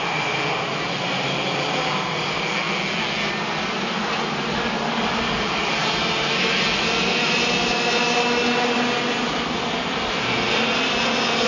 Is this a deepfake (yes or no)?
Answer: no